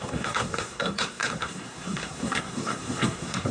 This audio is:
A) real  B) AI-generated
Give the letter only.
B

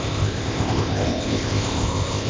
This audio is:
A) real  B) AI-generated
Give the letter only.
B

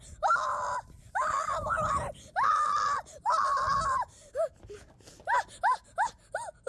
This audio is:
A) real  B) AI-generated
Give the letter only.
A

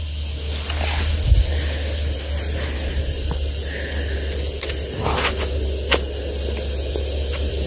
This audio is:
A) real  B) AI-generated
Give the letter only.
A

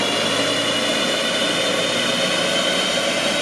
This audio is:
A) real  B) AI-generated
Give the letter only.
A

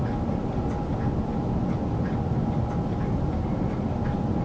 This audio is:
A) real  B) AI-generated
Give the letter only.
A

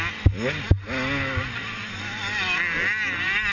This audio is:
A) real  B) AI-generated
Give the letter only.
A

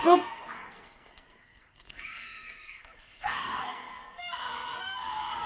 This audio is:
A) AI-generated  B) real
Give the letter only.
A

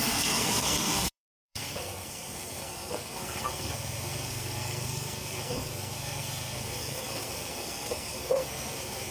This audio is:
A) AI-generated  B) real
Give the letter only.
A